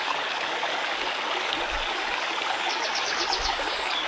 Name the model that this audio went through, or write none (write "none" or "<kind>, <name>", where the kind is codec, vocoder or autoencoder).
codec, DAC